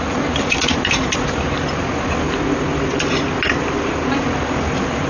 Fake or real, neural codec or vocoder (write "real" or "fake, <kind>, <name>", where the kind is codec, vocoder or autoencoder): real